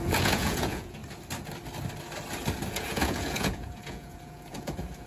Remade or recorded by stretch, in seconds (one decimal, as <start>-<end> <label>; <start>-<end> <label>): 0.0-1.0 remade; 1.0-2.7 recorded; 2.7-5.1 remade